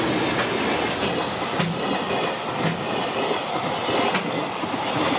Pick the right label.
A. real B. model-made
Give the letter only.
A